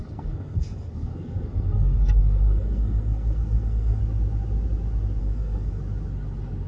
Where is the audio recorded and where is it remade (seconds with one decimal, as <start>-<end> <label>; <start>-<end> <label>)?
0.0-4.0 remade; 4.0-5.2 recorded; 5.2-5.8 remade; 5.8-6.7 recorded